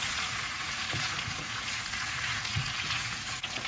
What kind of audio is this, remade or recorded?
remade